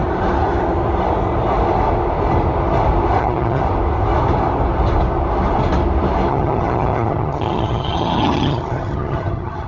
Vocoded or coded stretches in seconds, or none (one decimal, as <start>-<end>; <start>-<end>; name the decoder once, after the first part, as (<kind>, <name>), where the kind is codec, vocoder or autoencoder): 3.2-3.6 (vocoder, HiFi-GAN); 6.3-9.7